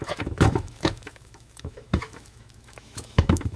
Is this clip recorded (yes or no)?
no